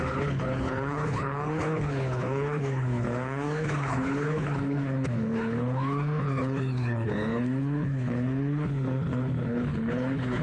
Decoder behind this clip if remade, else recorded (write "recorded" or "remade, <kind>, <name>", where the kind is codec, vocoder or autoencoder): remade, codec, HILCodec